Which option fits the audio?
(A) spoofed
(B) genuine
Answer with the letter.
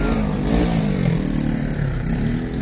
B